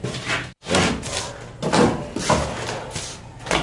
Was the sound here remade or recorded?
recorded